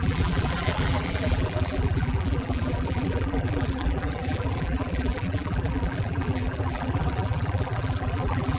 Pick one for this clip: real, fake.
fake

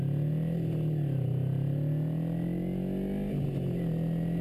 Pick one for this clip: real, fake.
real